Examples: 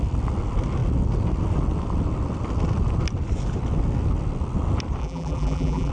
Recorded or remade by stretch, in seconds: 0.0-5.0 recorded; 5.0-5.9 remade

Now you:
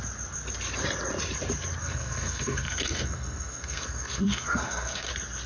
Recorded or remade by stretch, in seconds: 0.0-1.8 recorded; 1.8-5.1 remade; 5.1-5.5 recorded

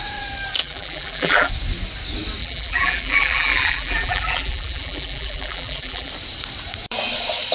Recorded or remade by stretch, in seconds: 0.0-0.6 recorded; 0.6-1.5 remade; 1.5-2.4 recorded; 2.4-6.1 remade; 6.1-7.5 recorded

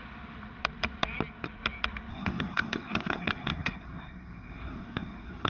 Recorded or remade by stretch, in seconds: 0.0-2.1 recorded; 2.1-5.5 remade

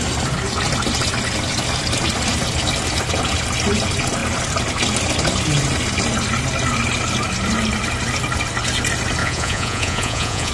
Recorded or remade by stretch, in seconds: 0.0-9.2 recorded; 9.2-10.5 remade